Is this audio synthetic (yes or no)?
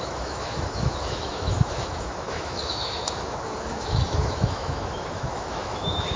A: yes